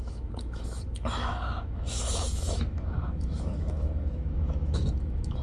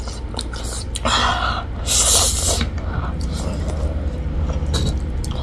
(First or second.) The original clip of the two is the second